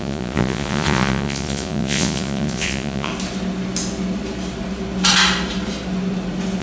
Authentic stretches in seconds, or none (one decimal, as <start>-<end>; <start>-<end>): 3.1-6.6